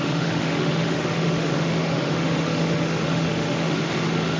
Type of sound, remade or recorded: remade